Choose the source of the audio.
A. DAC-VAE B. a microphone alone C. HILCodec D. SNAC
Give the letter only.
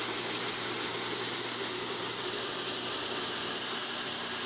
B